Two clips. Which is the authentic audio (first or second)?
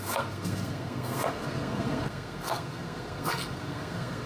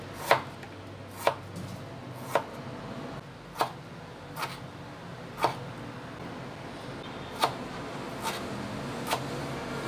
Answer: second